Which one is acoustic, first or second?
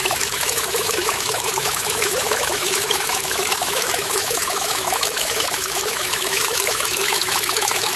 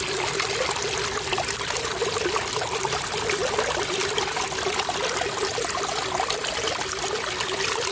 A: second